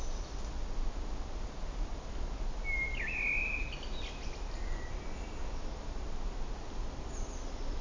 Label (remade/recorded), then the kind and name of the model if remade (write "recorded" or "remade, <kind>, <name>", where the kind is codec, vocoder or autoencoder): recorded